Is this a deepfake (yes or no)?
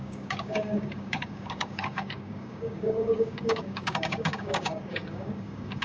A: yes